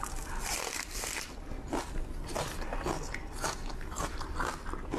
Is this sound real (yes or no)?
yes